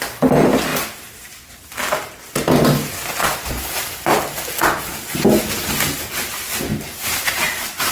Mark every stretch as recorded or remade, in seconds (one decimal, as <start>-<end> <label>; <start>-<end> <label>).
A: 0.0-6.7 recorded; 6.7-7.9 remade